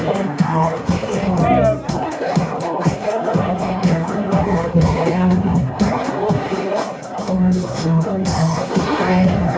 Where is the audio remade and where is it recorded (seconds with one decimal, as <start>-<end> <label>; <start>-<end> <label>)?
0.0-1.4 remade; 1.4-1.9 recorded; 1.9-9.6 remade